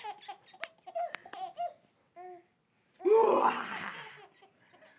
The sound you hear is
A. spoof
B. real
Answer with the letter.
B